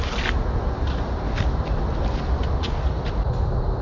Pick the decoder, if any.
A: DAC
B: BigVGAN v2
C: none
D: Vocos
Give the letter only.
C